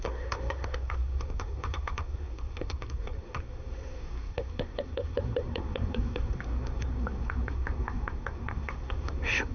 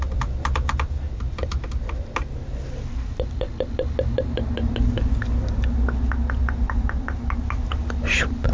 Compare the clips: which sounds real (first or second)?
second